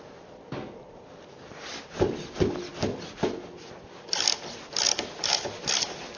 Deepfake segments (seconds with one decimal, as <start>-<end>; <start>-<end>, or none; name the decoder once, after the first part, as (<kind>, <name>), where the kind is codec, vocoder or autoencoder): none